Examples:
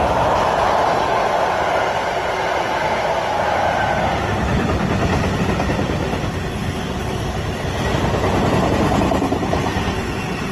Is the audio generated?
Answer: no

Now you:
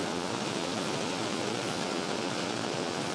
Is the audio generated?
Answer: yes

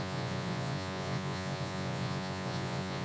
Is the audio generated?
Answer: yes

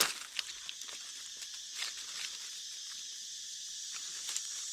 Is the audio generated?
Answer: no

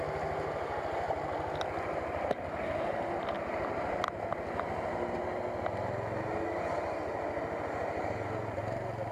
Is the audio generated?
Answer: no